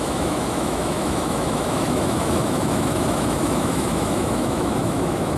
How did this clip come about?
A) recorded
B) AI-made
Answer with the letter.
B